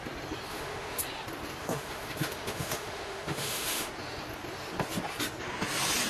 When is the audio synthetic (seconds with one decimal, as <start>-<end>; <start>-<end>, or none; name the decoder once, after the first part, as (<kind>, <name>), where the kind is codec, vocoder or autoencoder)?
0.5-1.0 (autoencoder, DAC-VAE); 1.6-3.9